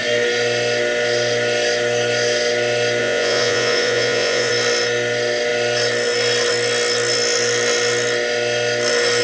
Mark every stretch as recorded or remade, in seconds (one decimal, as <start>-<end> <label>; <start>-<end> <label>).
0.0-3.0 recorded; 3.0-4.5 remade; 4.5-9.2 recorded